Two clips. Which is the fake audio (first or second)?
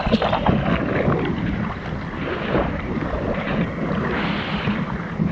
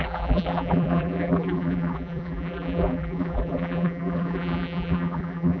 second